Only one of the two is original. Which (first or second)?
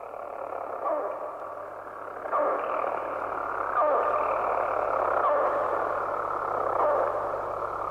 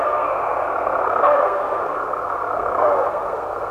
first